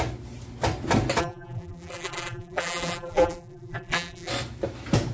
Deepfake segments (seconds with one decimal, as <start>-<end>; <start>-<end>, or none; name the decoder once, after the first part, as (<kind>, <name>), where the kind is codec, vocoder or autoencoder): 1.2-4.3 (vocoder, BigVGAN v2)